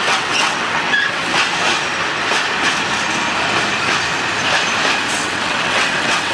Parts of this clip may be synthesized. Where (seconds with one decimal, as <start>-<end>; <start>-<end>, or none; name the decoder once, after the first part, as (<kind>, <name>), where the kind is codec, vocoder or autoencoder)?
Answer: 0.0-1.3 (vocoder, WaveNeXt); 5.1-6.3

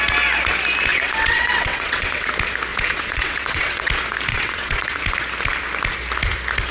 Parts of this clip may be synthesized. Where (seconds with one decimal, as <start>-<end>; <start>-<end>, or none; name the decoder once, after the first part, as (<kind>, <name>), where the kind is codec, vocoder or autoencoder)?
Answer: 0.9-2.3 (vocoder, WaveNeXt); 2.7-3.9; 4.3-5.0

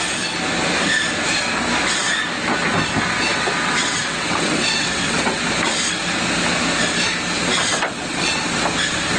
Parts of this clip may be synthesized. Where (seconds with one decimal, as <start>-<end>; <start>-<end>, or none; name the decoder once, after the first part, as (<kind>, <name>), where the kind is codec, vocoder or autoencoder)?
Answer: 3.3-5.4 (vocoder, WaveNeXt); 7.7-8.4

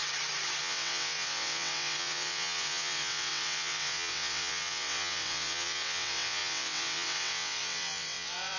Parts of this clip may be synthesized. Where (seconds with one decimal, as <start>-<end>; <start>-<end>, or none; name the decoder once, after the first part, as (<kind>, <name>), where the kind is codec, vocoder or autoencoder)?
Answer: 0.6-8.6 (vocoder, WaveNeXt)

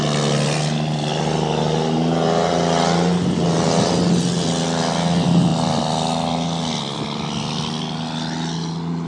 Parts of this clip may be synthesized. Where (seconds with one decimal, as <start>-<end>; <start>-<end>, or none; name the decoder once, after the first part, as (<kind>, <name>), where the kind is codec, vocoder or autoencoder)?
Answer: none

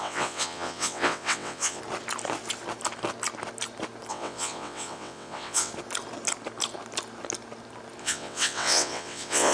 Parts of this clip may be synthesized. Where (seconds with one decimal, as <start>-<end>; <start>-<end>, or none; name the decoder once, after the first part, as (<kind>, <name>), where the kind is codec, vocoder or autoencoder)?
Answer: 0.0-1.8 (vocoder, WaveNeXt); 4.1-5.7; 8.0-9.5

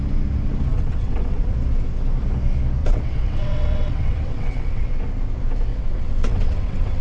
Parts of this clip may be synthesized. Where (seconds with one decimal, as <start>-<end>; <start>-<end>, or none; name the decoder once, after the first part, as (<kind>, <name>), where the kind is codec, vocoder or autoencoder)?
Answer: 0.7-1.5 (vocoder, WaveNeXt); 2.8-4.9; 5.7-7.0

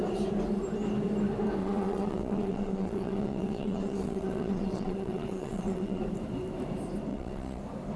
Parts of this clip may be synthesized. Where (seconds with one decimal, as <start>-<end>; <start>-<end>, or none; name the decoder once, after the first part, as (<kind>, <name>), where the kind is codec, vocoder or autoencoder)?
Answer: 1.6-6.0 (vocoder, WaveNeXt); 7.1-7.6